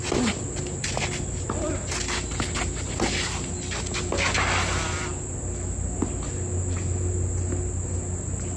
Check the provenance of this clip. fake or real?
real